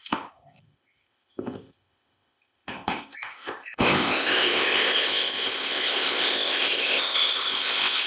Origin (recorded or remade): remade